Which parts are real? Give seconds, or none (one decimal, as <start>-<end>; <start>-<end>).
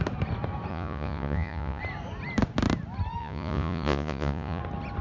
0.0-0.7; 1.8-3.2; 4.6-5.0